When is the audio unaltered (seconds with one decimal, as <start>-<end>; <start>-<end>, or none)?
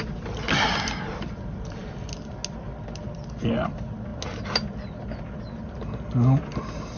0.0-7.0